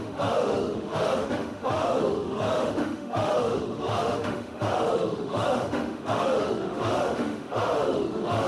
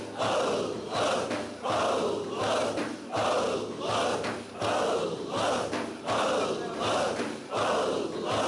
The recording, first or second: second